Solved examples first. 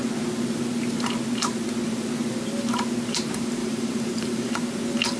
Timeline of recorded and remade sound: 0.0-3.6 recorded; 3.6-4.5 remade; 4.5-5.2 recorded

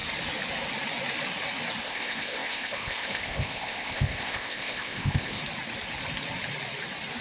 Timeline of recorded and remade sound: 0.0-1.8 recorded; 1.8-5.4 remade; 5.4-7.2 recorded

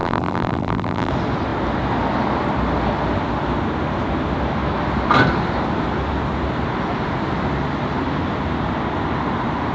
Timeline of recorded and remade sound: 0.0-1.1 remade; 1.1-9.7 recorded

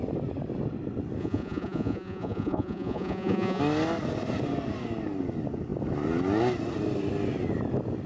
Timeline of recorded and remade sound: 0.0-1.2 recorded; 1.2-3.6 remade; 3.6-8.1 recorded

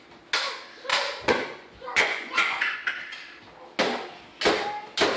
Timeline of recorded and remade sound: 0.0-0.9 recorded; 0.9-2.9 remade; 2.9-5.2 recorded

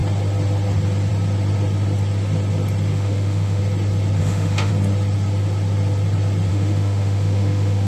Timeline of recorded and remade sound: 0.0-2.9 recorded; 2.9-3.6 remade; 3.6-4.2 recorded; 4.2-4.7 remade; 4.7-6.5 recorded; 6.5-7.9 remade

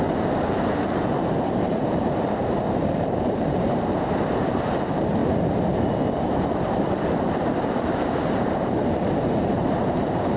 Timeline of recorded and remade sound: 0.0-5.2 remade; 5.2-5.8 recorded; 5.8-10.4 remade

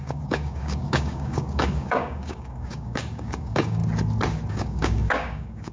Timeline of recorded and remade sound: 0.0-3.8 remade; 3.8-4.5 recorded; 4.5-5.7 remade